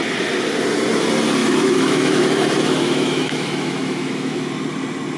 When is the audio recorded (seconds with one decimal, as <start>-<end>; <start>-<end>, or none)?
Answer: 0.0-1.4; 4.5-5.2